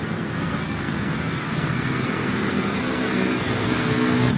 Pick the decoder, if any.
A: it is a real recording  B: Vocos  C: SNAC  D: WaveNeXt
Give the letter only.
C